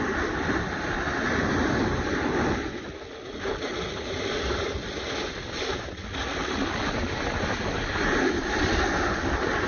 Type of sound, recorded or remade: recorded